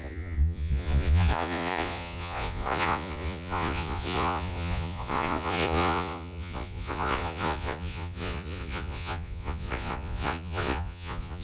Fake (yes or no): yes